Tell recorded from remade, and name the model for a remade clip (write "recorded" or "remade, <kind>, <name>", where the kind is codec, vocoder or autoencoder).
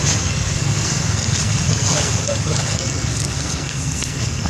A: remade, codec, SNAC